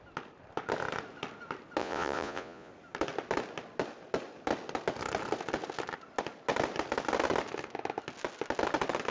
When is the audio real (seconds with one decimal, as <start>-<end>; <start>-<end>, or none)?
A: 0.0-1.8; 2.7-9.1